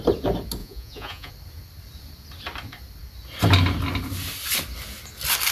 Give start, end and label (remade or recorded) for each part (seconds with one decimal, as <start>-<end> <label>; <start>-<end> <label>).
0.0-0.6 recorded; 0.6-1.3 remade; 1.3-5.5 recorded

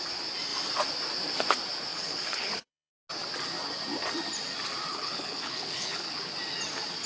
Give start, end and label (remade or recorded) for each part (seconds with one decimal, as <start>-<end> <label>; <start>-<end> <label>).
0.0-1.9 recorded; 1.9-2.9 remade; 2.9-4.9 recorded; 4.9-6.3 remade; 6.3-7.1 recorded

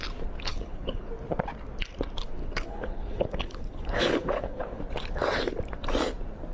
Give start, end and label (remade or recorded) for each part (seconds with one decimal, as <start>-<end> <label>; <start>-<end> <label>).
0.0-0.5 recorded; 0.5-1.1 remade; 1.1-2.4 recorded; 2.4-4.8 remade; 4.8-6.5 recorded

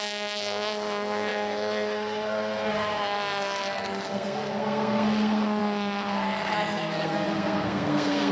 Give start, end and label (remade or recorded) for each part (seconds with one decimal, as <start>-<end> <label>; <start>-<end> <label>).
0.0-8.3 remade

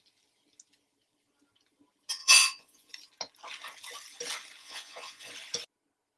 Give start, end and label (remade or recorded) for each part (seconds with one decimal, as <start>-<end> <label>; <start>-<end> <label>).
0.0-2.2 recorded; 2.2-2.9 remade; 2.9-4.6 recorded; 4.6-5.3 remade; 5.3-6.2 recorded

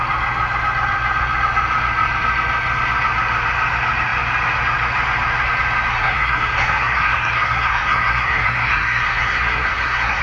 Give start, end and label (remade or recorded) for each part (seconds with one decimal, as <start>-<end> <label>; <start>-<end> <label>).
0.0-5.9 recorded; 5.9-10.2 remade

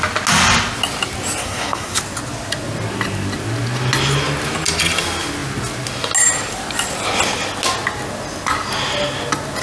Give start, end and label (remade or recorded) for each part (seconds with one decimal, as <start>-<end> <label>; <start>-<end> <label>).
0.0-1.4 recorded; 1.4-2.0 remade; 2.0-9.6 recorded